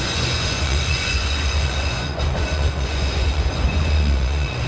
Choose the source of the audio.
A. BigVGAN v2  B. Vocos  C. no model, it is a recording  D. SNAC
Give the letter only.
B